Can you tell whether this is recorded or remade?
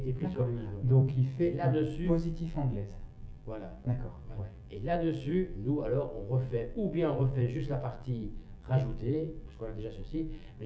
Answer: remade